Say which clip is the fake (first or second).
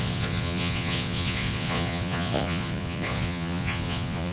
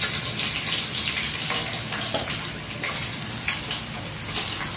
first